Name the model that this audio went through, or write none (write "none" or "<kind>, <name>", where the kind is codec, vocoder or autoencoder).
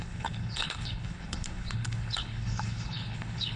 codec, HILCodec